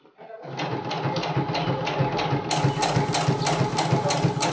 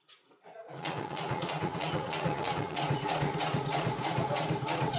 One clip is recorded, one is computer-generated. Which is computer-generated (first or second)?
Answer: second